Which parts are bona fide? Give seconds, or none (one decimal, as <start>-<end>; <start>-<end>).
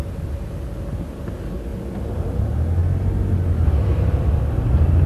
0.0-5.1